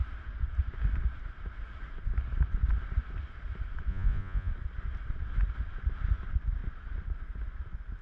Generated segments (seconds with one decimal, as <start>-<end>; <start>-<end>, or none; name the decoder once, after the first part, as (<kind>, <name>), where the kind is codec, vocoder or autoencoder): 3.9-4.5 (vocoder, Vocos)

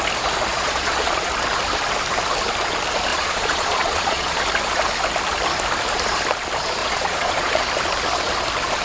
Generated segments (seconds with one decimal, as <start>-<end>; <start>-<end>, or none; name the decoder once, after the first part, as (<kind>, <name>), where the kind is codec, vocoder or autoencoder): 0.5-1.3 (vocoder, Vocos); 3.1-4.4; 6.8-7.6